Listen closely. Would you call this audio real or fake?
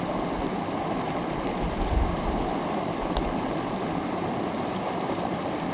real